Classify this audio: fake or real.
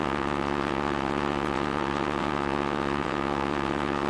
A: fake